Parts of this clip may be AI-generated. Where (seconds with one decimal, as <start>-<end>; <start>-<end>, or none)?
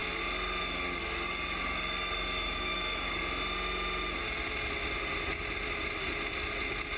0.6-3.2